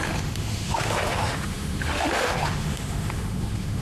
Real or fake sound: fake